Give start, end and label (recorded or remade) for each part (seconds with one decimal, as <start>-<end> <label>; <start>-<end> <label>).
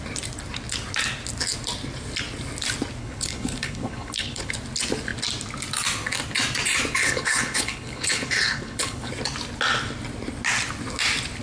0.0-3.0 recorded; 3.0-4.5 remade; 4.5-7.0 recorded; 7.0-9.1 remade; 9.1-11.4 recorded